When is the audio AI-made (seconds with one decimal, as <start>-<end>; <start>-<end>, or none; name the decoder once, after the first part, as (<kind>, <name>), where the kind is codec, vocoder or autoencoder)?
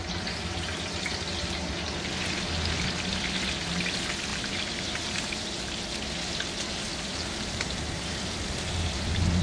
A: 4.3-5.6 (vocoder, BigVGAN v2); 7.1-8.4